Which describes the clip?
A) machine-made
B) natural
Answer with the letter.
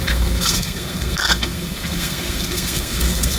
A